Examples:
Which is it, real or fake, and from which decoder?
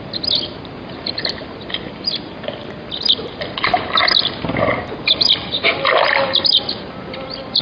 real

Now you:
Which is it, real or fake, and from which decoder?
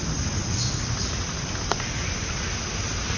real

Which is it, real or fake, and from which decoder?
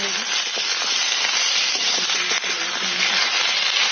real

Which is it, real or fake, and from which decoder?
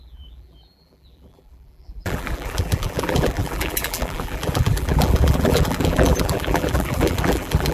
fake, vocoder, BigVGAN v2